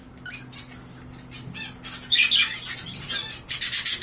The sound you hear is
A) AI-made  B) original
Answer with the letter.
B